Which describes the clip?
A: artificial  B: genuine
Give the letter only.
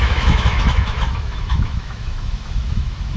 A